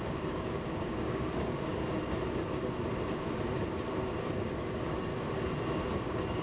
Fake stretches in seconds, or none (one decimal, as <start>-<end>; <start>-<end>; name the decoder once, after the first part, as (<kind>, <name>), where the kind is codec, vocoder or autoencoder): 0.0-1.7 (codec, DAC); 4.3-5.1; 6.0-6.4